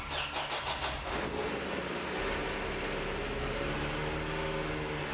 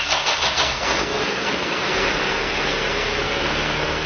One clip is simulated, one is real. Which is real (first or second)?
first